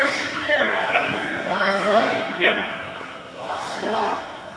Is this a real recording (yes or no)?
no